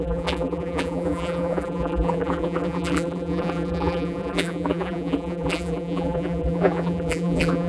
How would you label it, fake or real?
fake